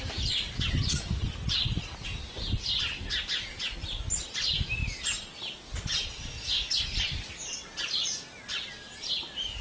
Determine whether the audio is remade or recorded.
recorded